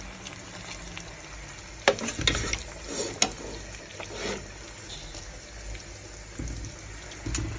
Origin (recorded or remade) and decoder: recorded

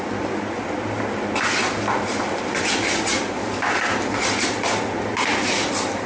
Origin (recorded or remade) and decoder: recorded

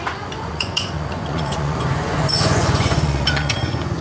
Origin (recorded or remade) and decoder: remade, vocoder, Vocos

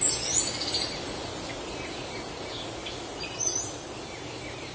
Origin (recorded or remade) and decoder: recorded